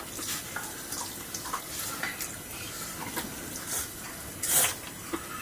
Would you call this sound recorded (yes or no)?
yes